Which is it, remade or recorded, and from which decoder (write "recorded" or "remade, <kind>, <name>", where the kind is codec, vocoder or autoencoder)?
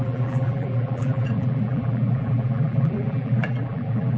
remade, vocoder, BigVGAN v2